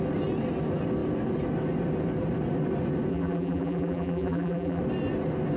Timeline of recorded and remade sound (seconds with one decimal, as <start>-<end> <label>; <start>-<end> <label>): 0.0-3.1 recorded; 3.1-4.8 remade; 4.8-5.6 recorded